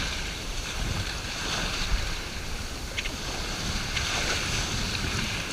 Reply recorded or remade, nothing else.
remade